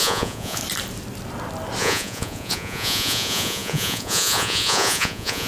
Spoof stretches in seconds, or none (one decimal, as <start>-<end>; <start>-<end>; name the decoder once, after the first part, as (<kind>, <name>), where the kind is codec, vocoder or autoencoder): 0.0-0.6 (vocoder, Vocos); 1.8-5.5